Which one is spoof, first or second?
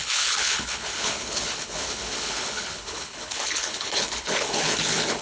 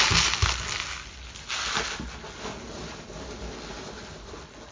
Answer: first